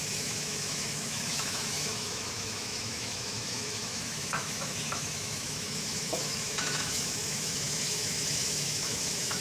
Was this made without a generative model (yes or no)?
no